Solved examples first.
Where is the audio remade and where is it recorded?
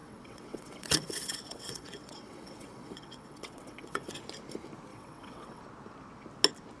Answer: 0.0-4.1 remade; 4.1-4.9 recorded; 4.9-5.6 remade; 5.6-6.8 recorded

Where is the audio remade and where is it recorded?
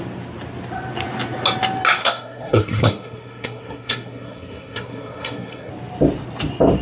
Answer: 0.0-2.0 recorded; 2.0-5.7 remade; 5.7-6.8 recorded